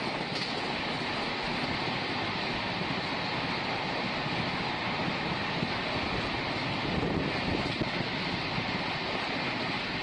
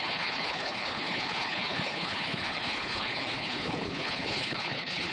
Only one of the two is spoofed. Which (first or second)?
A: second